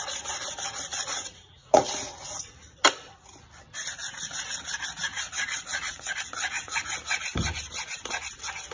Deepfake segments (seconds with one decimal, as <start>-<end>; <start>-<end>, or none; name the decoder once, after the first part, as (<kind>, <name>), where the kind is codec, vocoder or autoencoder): 0.9-2.8 (vocoder, Vocos); 5.1-6.8